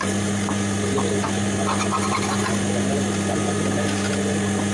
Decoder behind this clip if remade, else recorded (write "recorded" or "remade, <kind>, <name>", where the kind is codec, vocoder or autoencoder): recorded